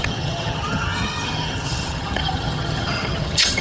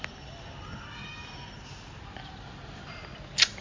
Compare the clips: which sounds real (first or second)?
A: second